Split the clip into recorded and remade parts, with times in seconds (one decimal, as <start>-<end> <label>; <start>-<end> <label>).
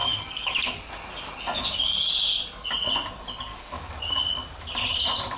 0.0-0.9 remade; 0.9-3.5 recorded; 3.5-4.0 remade; 4.0-5.4 recorded